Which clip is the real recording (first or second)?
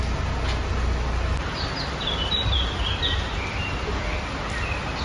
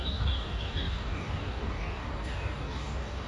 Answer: first